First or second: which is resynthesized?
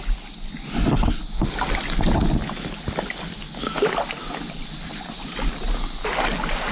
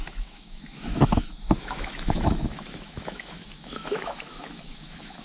second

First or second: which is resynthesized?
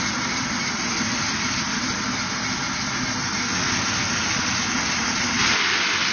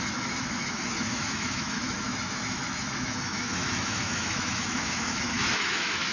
second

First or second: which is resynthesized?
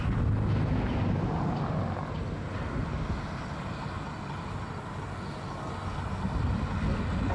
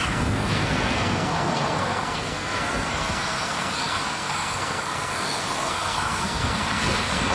second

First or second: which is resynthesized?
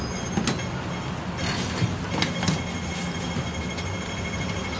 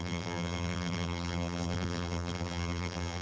second